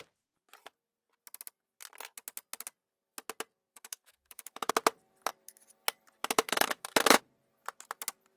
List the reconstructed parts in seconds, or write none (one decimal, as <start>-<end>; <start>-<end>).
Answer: 3.7-4.7; 6.2-7.2